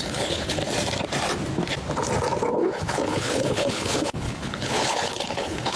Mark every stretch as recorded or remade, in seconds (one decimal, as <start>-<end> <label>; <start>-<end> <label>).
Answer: 0.0-0.6 remade; 0.6-2.5 recorded; 2.5-5.8 remade